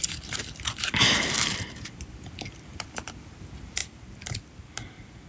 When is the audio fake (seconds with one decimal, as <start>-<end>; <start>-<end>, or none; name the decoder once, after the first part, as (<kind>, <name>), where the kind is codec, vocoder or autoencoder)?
0.0-3.2 (vocoder, BigVGAN v2); 3.8-5.3